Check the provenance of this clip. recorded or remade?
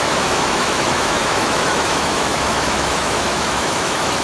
remade